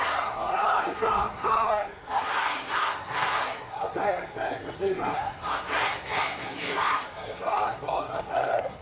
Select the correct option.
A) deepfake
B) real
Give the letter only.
A